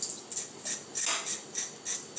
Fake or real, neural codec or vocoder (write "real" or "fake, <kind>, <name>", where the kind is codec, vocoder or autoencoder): real